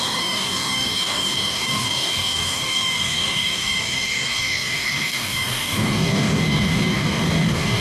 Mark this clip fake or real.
fake